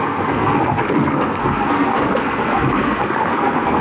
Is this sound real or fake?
fake